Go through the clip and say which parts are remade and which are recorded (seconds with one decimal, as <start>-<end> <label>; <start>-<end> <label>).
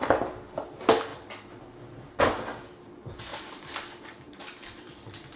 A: 0.0-3.3 recorded; 3.3-4.9 remade; 4.9-5.4 recorded